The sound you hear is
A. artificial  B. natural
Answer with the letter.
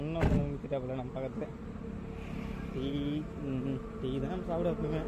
B